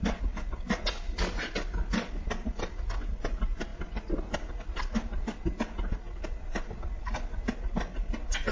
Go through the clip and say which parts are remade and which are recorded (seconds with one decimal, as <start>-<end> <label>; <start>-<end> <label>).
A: 0.0-8.5 recorded